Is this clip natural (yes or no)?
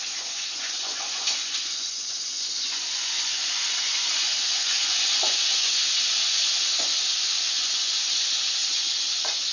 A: no